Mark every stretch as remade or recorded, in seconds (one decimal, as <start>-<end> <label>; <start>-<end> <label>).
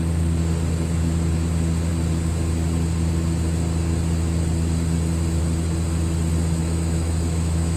0.0-6.6 recorded; 6.6-7.8 remade